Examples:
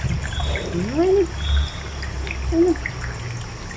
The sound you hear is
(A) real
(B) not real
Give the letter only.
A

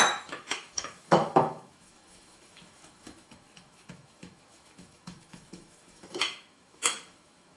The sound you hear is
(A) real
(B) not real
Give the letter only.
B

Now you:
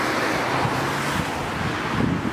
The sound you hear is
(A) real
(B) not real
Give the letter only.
A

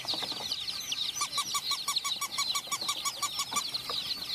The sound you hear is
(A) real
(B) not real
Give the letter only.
A